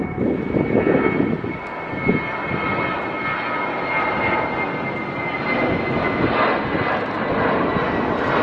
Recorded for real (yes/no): yes